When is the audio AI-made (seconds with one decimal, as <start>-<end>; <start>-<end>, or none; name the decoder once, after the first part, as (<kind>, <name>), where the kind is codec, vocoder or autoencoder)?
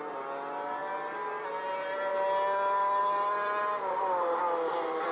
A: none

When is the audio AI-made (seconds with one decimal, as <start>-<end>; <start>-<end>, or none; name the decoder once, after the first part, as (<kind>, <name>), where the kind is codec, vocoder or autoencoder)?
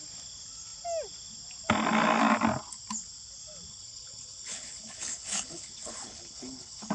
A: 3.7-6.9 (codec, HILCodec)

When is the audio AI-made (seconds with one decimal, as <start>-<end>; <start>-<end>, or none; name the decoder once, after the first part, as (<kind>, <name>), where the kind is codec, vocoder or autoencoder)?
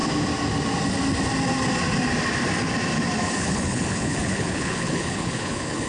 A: 3.4-5.9 (codec, HILCodec)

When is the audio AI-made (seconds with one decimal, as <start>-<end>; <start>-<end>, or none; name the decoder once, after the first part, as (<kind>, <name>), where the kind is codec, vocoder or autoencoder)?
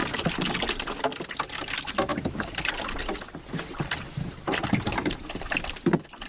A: none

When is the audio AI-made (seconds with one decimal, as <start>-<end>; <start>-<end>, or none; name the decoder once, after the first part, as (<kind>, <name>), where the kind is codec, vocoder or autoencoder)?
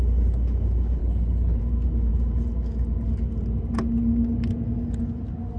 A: 1.0-1.6 (codec, HILCodec)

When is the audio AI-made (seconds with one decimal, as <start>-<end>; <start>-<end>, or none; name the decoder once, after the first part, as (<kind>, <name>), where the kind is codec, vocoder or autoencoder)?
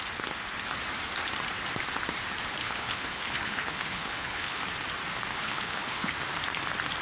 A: 2.6-4.6 (codec, HILCodec); 5.3-6.1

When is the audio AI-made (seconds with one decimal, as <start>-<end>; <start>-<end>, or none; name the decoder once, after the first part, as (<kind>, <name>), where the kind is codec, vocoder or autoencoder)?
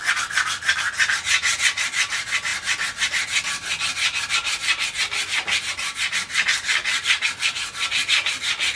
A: none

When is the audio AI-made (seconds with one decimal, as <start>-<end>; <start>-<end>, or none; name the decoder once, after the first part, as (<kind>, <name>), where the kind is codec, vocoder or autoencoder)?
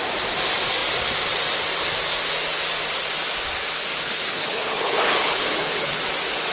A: 3.9-6.0 (codec, HILCodec)